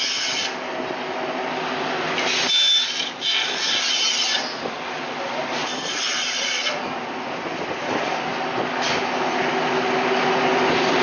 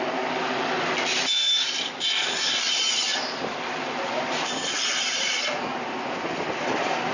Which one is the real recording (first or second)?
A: first